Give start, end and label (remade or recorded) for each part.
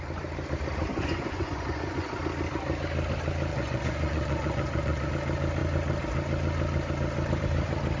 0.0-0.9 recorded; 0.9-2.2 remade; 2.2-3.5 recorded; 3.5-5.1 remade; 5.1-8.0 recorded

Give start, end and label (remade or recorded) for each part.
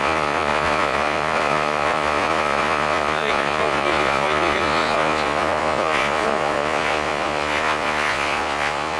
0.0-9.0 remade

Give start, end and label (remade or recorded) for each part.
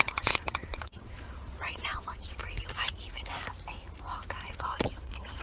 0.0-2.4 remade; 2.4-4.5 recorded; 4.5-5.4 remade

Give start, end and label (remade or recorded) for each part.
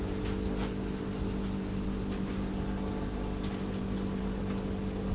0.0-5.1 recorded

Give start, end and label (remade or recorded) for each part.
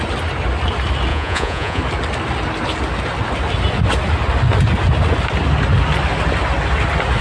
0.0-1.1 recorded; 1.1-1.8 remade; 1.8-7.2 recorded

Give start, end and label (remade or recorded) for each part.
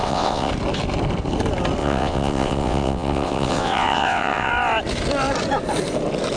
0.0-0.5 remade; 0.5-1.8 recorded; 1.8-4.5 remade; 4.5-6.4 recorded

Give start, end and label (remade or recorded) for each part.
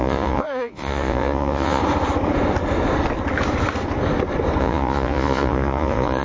0.0-1.8 remade; 1.8-4.6 recorded; 4.6-6.2 remade